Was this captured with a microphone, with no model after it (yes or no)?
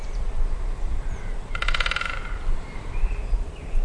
no